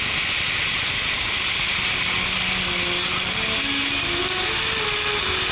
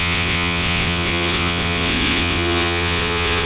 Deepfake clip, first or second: second